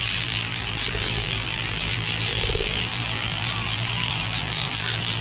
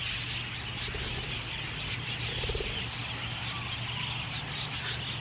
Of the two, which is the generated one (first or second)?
first